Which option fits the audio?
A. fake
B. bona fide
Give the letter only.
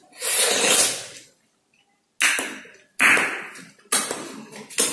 B